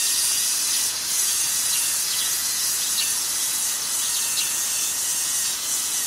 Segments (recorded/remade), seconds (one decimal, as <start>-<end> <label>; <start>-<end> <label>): 0.0-6.1 remade